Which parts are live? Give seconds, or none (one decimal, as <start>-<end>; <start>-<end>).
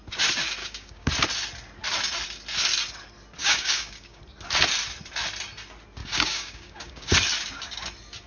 0.0-0.6; 1.1-3.4; 4.2-6.0; 7.1-8.3